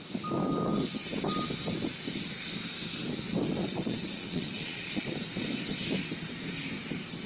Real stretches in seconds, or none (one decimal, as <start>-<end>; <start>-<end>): 0.0-3.6; 5.0-7.3